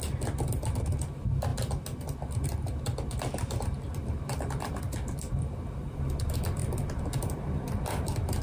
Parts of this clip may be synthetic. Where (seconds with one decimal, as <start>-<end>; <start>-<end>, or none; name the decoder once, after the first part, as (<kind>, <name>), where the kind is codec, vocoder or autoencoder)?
1.0-1.5 (vocoder, BigVGAN v2); 3.9-8.4